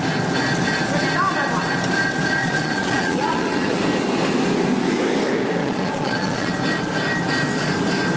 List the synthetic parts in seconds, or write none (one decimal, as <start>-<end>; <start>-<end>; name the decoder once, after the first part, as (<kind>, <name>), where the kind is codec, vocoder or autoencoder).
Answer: 2.4-3.8 (vocoder, Vocos); 5.6-6.5